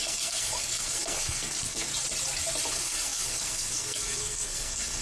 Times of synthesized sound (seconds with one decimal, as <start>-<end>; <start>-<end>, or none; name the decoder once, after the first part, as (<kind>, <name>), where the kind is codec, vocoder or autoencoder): 0.0-1.9 (codec, SNAC); 2.7-5.0